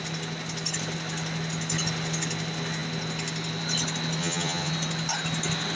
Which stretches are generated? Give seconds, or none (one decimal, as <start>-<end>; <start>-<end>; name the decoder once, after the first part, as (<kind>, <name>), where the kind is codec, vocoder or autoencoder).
4.2-4.7 (vocoder, HiFi-GAN)